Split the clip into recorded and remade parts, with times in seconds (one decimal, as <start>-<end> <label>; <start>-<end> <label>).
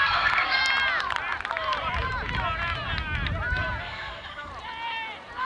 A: 0.0-0.6 remade; 0.6-3.8 recorded; 3.8-4.5 remade; 4.5-5.4 recorded